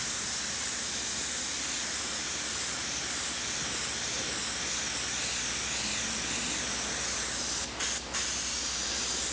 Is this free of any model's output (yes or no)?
yes